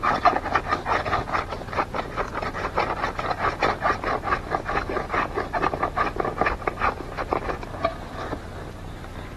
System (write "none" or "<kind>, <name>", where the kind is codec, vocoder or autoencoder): none